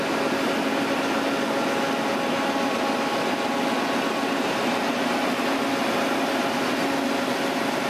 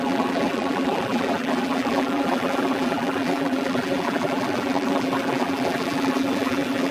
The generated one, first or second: second